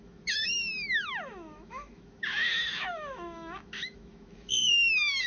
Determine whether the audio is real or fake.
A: fake